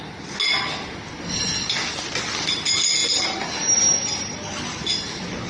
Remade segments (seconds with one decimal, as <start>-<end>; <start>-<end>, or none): none

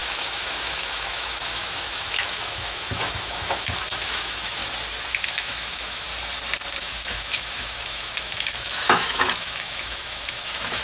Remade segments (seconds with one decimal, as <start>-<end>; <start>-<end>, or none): 0.0-4.6; 5.1-6.1; 6.8-10.8

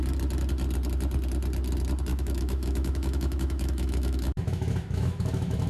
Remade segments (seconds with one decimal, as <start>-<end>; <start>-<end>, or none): 2.1-5.7

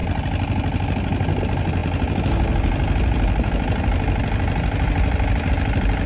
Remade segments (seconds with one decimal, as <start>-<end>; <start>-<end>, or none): none